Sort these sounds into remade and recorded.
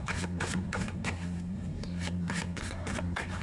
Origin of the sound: remade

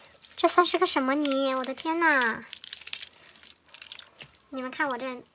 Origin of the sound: recorded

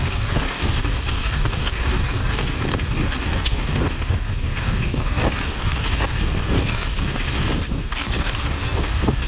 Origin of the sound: remade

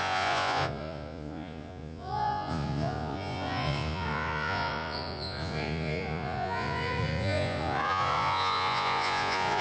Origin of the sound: remade